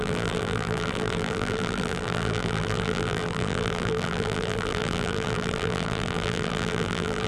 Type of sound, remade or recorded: remade